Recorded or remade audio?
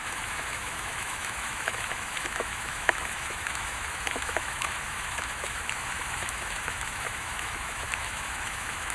remade